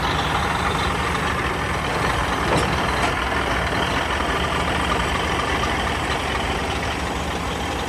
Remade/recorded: recorded